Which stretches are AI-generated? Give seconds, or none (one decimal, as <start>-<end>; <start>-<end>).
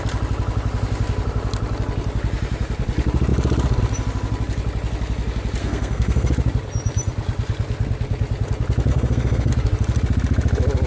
5.6-6.3; 8.9-9.5